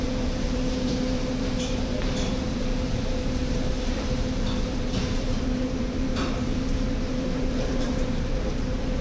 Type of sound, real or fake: fake